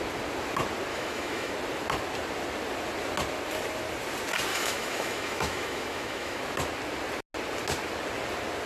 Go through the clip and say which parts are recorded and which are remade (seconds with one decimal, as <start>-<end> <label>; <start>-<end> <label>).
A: 0.0-0.9 recorded; 0.9-1.5 remade; 1.5-4.5 recorded; 4.5-6.4 remade; 6.4-8.7 recorded